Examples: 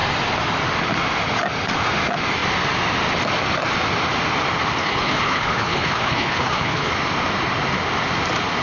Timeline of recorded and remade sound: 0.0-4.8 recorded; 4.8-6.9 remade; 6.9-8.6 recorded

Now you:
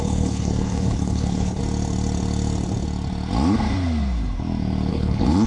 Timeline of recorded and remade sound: 0.0-1.6 remade; 1.6-4.9 recorded; 4.9-5.5 remade

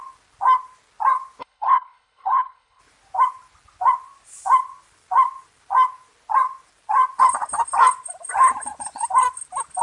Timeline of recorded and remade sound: 0.0-1.4 recorded; 1.4-2.8 remade; 2.8-9.8 recorded

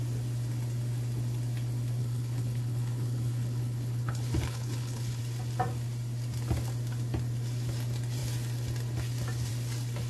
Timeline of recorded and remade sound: 0.0-2.0 recorded; 2.0-5.2 remade; 5.2-10.1 recorded

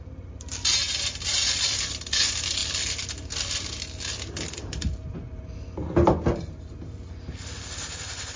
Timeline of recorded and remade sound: 0.0-8.4 recorded

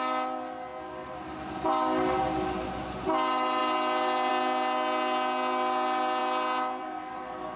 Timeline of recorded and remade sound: 0.0-7.6 recorded

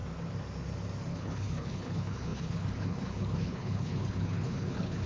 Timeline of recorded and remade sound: 0.0-1.1 recorded; 1.1-5.1 remade